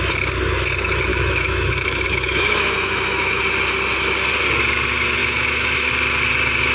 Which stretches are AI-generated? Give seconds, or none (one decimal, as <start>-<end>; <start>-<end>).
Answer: 1.1-3.4; 5.2-5.9